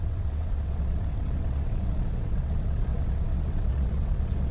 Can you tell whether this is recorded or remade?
remade